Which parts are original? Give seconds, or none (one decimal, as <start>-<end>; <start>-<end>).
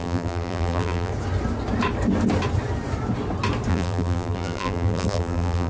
1.1-3.7